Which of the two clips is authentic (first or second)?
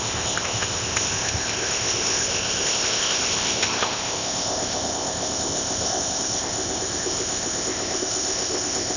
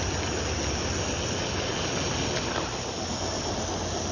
second